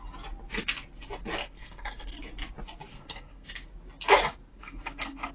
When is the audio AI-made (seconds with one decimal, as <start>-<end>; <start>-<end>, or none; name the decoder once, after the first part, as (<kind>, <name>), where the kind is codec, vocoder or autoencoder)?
1.4-2.1 (codec, SNAC); 2.9-3.5; 4.5-5.3